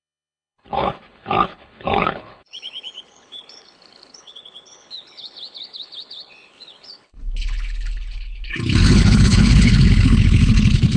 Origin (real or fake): fake